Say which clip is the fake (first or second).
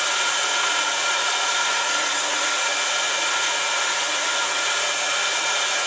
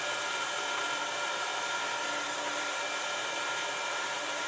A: first